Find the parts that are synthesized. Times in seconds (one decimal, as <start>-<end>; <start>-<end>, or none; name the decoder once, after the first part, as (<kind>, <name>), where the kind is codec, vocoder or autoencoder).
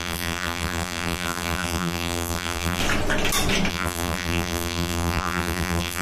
0.0-2.8 (vocoder, BigVGAN v2); 3.7-6.0